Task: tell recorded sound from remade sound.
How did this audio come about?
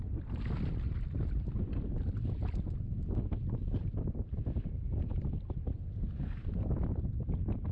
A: recorded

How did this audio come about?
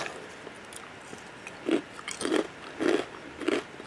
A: recorded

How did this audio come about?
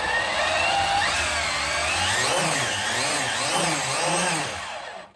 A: recorded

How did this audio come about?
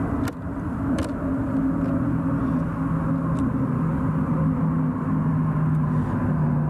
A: recorded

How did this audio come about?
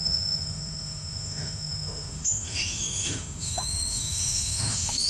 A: remade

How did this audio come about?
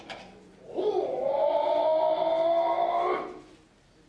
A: recorded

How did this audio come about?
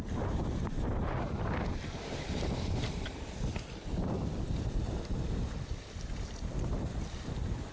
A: remade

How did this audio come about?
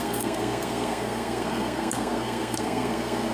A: remade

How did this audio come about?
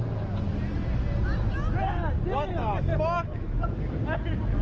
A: recorded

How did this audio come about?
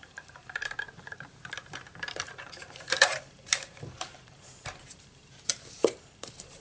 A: remade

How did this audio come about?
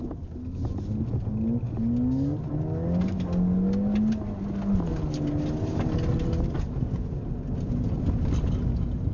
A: recorded